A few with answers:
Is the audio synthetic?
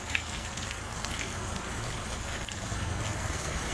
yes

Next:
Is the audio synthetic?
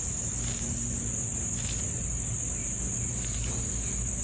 no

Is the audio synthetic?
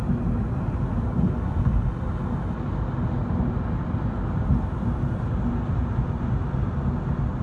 no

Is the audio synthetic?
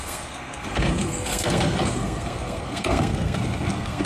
yes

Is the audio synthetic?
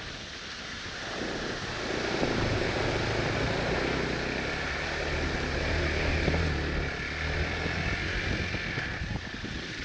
no